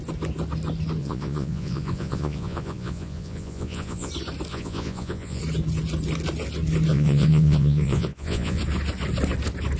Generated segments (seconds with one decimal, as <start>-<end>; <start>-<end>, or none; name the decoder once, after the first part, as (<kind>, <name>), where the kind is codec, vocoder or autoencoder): 1.0-4.1 (vocoder, Vocos); 4.5-5.4; 6.9-8.6